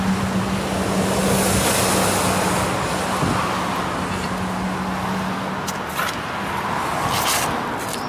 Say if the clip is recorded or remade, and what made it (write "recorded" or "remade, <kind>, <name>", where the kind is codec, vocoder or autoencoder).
recorded